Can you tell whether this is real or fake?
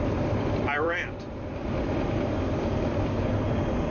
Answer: fake